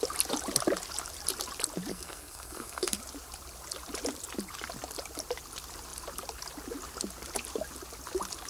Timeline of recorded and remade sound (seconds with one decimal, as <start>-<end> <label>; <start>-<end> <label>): 0.0-1.9 recorded; 1.9-3.0 remade; 3.0-8.5 recorded